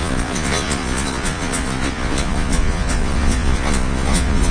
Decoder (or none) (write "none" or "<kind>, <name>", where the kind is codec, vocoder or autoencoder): vocoder, Vocos